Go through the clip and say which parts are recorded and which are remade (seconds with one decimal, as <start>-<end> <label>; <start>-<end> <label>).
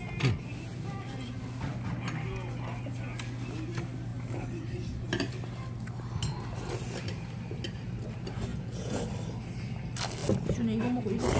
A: 0.0-8.5 recorded; 8.5-9.0 remade; 9.0-11.4 recorded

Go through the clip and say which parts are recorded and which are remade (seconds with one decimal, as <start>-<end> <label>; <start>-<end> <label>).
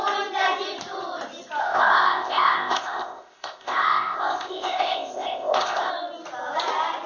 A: 0.0-1.6 recorded; 1.6-5.9 remade; 5.9-7.1 recorded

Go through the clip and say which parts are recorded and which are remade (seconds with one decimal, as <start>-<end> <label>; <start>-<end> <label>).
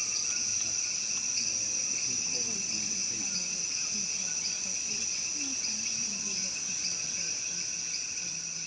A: 0.0-8.7 recorded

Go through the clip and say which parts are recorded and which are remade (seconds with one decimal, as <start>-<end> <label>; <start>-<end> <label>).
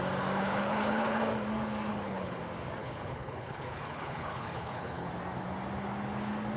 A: 0.0-0.4 recorded; 0.4-1.2 remade; 1.2-1.9 recorded; 1.9-2.4 remade; 2.4-2.8 recorded; 2.8-5.1 remade; 5.1-6.6 recorded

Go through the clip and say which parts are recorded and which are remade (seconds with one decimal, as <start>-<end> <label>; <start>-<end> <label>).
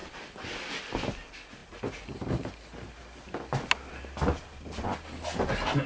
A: 0.0-0.8 remade; 0.8-1.6 recorded; 1.6-2.2 remade; 2.2-5.9 recorded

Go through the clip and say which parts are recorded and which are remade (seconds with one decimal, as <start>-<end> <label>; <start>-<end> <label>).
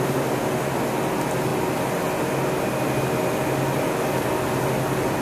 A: 0.0-5.2 recorded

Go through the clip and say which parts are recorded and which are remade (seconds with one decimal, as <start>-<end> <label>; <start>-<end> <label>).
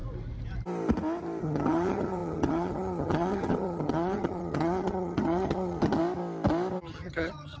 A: 0.0-1.4 recorded; 1.4-6.0 remade; 6.0-6.9 recorded; 6.9-7.6 remade